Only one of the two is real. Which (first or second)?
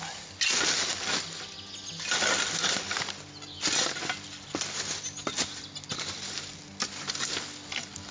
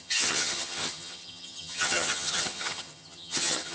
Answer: first